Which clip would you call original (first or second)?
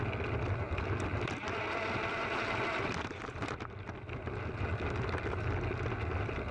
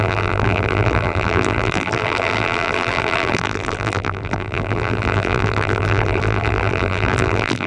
first